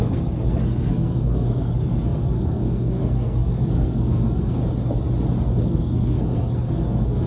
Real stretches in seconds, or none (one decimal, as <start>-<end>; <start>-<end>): 4.6-5.6